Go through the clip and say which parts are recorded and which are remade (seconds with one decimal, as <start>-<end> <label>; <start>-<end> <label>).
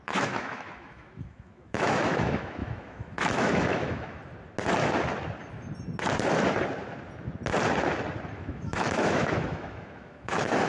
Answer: 0.0-4.2 remade; 4.2-8.3 recorded; 8.3-10.7 remade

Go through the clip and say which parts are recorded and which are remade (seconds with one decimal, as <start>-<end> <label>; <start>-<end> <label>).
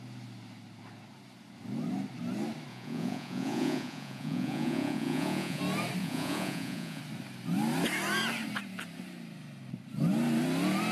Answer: 0.0-2.7 recorded; 2.7-5.6 remade; 5.6-6.0 recorded; 6.0-7.0 remade; 7.0-10.9 recorded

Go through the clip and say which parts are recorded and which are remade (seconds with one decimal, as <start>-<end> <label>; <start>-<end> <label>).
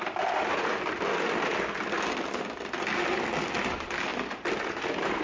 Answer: 0.0-0.7 remade; 0.7-3.6 recorded; 3.6-4.1 remade; 4.1-4.7 recorded; 4.7-5.2 remade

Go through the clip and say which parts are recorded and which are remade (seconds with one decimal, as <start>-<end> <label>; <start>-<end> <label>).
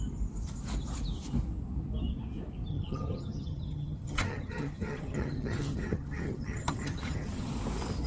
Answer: 0.0-2.7 recorded; 2.7-7.5 remade; 7.5-8.1 recorded